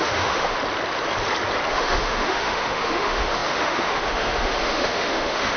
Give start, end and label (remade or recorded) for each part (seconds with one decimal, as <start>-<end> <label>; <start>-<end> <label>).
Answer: 0.0-0.6 remade; 0.6-1.7 recorded; 1.7-5.6 remade